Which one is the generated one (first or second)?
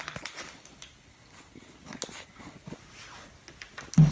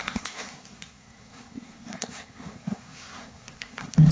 second